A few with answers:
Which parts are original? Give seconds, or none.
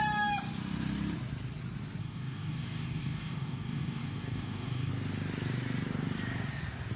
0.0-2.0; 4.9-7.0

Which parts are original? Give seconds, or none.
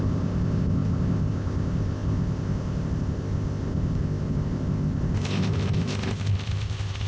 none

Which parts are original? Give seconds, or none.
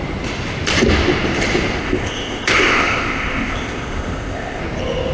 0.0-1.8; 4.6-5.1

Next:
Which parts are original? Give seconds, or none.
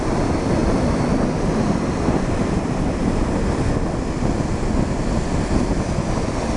0.0-6.6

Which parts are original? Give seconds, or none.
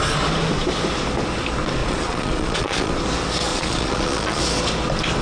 0.0-1.8; 2.9-3.5; 4.4-5.2